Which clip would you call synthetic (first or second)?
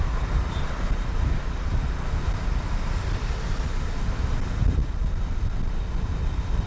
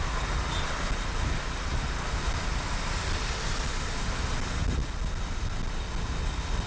first